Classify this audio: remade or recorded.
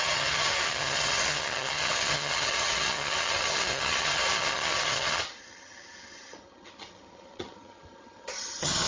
remade